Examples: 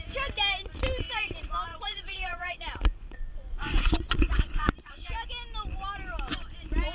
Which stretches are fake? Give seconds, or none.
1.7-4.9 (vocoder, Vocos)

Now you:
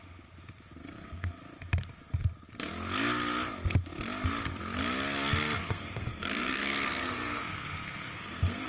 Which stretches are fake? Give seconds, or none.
0.8-1.4 (codec, SNAC); 5.6-8.7

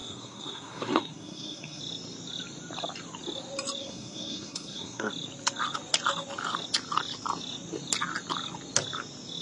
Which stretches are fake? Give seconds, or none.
0.0-1.8 (codec, SNAC); 3.8-5.1

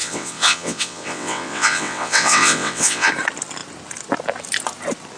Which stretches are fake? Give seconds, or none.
0.0-3.1 (vocoder, WaveNeXt)

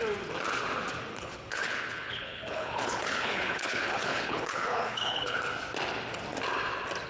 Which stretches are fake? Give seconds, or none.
1.1-5.4 (codec, HILCodec)

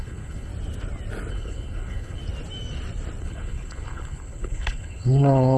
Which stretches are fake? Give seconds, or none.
0.0-0.5 (codec, HILCodec); 1.3-2.2; 3.2-5.6

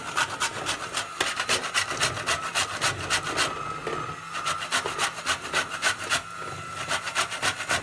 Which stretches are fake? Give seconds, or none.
none